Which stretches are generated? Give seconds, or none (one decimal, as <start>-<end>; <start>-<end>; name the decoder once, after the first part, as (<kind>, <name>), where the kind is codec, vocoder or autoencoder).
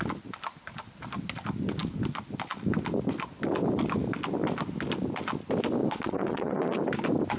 5.8-6.8 (vocoder, Vocos)